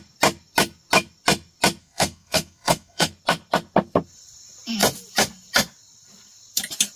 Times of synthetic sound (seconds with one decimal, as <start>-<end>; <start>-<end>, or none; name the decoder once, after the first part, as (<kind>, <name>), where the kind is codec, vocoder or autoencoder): 1.8-3.1 (codec, SNAC)